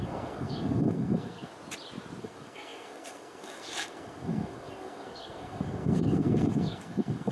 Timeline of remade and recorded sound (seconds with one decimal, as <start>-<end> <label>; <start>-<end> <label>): 0.0-1.5 remade; 1.5-2.2 recorded; 2.2-7.3 remade